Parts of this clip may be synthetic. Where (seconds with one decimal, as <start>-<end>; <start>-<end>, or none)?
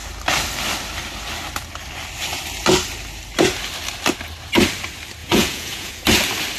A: 5.2-5.9